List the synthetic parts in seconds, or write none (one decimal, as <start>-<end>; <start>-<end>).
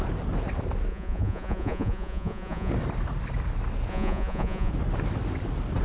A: 0.9-2.7; 3.9-4.7